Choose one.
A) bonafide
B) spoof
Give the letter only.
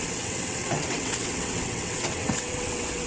B